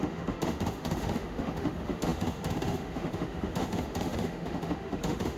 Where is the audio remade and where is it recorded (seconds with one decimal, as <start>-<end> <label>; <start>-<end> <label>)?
0.0-5.4 remade